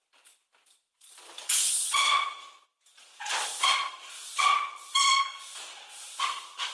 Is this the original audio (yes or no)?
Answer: no